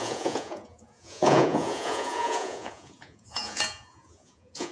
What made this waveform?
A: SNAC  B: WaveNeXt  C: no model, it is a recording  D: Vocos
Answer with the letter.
D